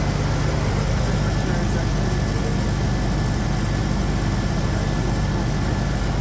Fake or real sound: real